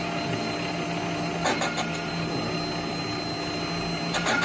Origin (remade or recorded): recorded